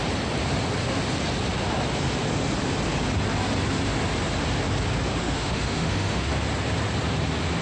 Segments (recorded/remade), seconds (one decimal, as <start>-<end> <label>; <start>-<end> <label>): 0.0-5.2 recorded; 5.2-6.3 remade; 6.3-7.6 recorded